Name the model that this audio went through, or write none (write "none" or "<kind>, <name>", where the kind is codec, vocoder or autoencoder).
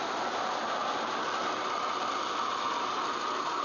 none